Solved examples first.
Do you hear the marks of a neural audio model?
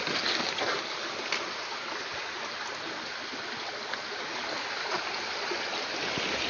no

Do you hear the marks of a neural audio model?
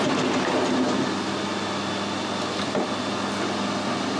no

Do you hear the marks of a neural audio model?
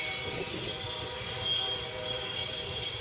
no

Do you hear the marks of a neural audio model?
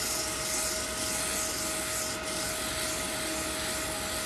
no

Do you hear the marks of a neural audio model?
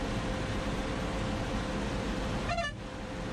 yes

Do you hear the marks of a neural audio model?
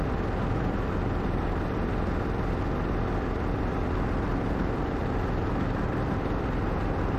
yes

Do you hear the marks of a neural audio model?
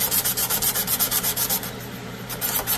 yes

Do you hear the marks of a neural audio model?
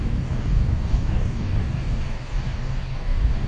yes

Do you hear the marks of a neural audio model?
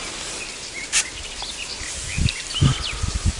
no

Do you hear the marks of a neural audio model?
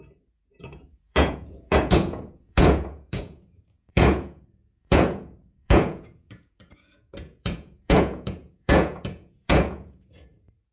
yes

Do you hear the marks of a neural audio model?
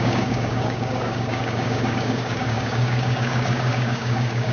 yes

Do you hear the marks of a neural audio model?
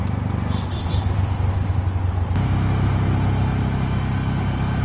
no